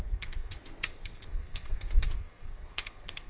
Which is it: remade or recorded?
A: remade